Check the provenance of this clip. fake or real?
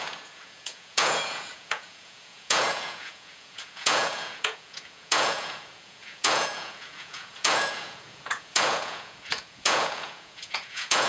fake